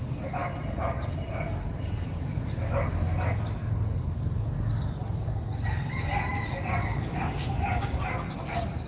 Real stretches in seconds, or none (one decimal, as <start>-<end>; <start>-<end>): 0.0-6.8; 8.0-8.9

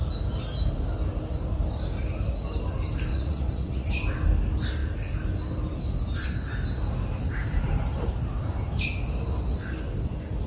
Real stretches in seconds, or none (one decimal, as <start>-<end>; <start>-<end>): 0.0-3.1; 3.9-10.5

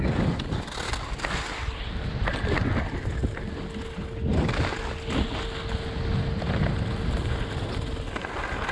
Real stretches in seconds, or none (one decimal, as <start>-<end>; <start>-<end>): 0.0-8.7

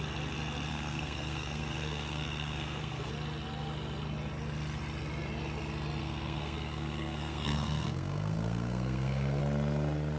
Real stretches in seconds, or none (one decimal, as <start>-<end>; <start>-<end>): 0.0-0.7; 3.1-6.0; 9.4-10.2